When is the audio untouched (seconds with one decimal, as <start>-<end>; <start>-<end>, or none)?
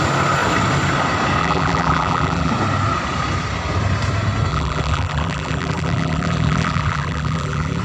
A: 0.0-1.4; 2.5-4.5